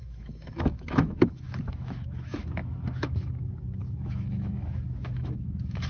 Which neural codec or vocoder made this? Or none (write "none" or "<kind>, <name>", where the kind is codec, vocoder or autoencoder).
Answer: autoencoder, DAC-VAE